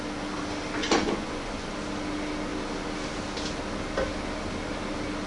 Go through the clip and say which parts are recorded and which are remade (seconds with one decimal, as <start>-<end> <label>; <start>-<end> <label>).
0.0-0.8 recorded; 0.8-1.7 remade; 1.7-5.3 recorded